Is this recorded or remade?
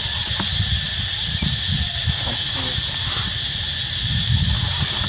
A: recorded